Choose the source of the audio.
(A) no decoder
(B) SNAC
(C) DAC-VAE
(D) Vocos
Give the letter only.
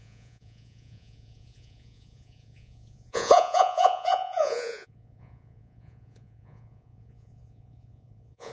D